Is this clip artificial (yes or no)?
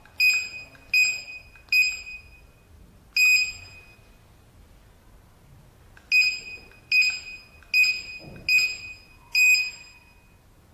no